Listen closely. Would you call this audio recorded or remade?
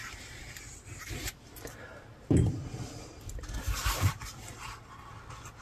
recorded